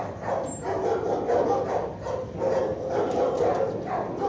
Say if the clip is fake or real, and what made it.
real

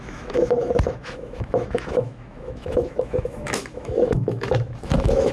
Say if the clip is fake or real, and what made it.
fake, autoencoder, DAC-VAE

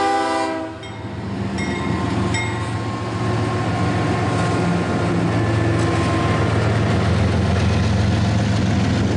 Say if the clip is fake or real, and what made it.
real